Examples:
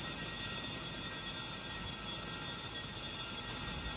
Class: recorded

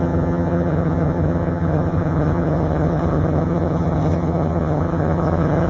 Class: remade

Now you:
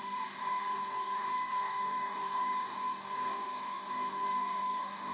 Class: remade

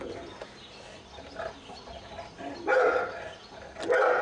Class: recorded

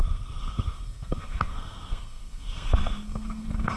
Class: remade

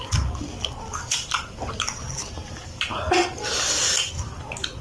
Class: recorded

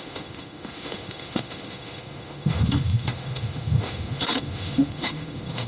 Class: remade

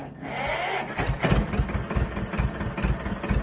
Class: recorded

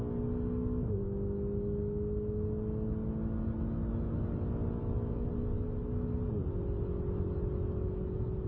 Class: recorded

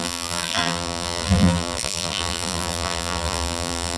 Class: remade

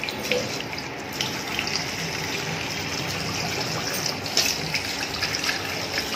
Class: recorded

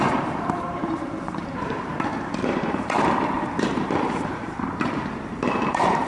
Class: remade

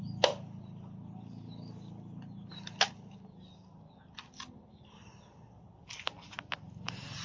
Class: recorded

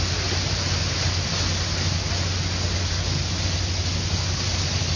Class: recorded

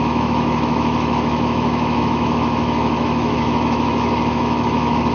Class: remade